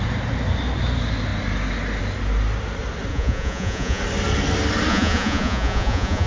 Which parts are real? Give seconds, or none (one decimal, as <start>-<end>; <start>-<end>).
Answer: 0.0-3.1; 4.0-4.9